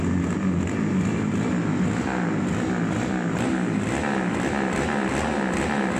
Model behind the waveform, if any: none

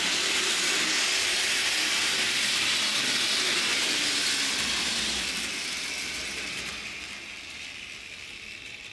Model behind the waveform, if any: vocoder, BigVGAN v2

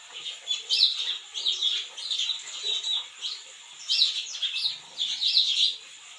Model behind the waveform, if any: none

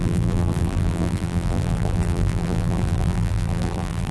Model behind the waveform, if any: vocoder, BigVGAN v2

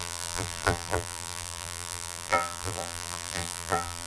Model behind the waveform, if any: vocoder, BigVGAN v2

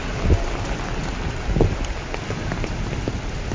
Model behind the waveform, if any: none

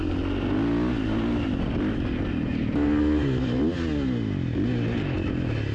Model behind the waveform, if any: none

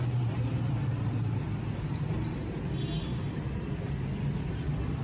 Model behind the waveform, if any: none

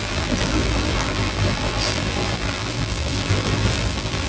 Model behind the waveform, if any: vocoder, BigVGAN v2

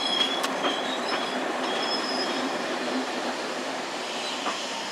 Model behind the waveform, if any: vocoder, BigVGAN v2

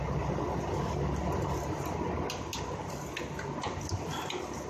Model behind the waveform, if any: none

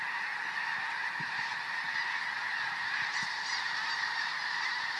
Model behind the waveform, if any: vocoder, BigVGAN v2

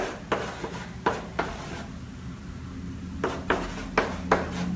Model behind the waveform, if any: none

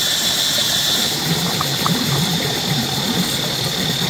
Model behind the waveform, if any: vocoder, BigVGAN v2